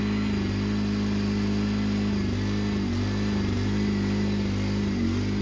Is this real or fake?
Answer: real